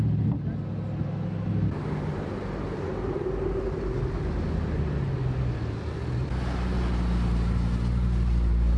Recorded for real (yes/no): yes